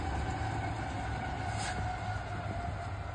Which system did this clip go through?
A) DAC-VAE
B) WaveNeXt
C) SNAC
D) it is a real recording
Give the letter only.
D